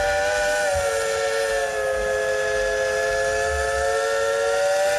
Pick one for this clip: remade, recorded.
recorded